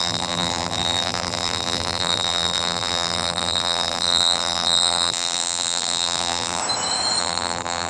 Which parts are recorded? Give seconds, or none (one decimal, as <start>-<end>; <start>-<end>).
6.6-7.2